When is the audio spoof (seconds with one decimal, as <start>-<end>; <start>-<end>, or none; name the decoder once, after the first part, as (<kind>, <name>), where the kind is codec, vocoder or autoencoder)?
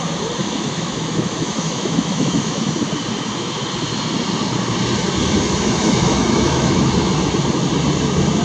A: 0.4-2.7 (autoencoder, DAC-VAE); 5.2-6.9